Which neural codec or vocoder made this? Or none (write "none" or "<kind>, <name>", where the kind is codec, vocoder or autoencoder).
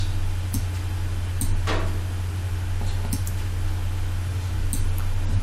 none